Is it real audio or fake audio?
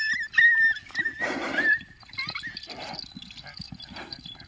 real